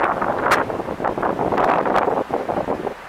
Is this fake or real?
real